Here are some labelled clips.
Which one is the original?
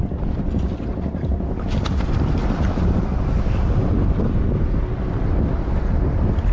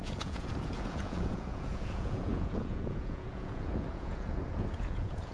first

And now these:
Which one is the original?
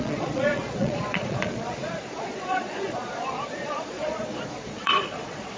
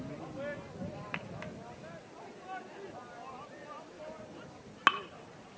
second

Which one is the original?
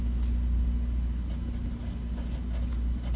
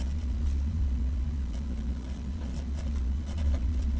first